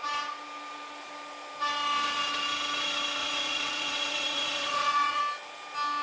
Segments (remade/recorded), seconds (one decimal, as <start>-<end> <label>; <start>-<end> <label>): 0.0-3.2 recorded; 3.2-5.2 remade; 5.2-6.0 recorded